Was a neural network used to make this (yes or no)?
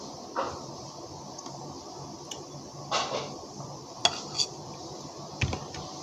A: no